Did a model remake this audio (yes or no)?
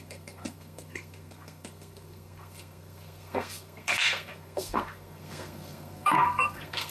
yes